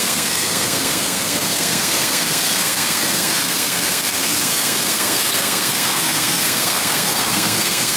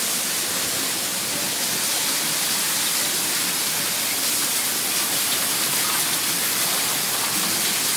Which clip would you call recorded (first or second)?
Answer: second